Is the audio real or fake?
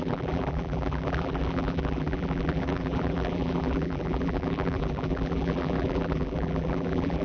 fake